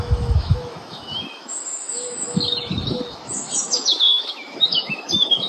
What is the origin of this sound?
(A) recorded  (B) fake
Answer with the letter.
B